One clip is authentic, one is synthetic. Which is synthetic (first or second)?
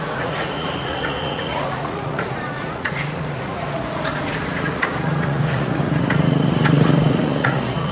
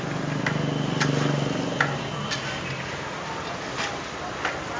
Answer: first